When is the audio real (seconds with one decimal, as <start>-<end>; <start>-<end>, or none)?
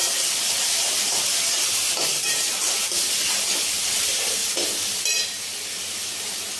0.9-2.1; 3.3-6.6